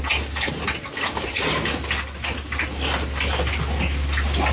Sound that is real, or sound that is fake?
real